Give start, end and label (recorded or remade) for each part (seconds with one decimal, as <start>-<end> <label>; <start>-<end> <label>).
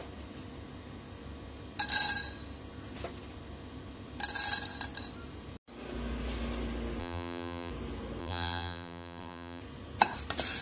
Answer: 0.0-7.0 recorded; 7.0-7.7 remade; 7.7-8.2 recorded; 8.2-9.6 remade; 9.6-10.6 recorded